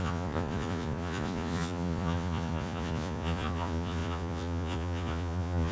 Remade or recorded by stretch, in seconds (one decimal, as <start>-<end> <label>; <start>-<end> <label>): 0.0-5.7 remade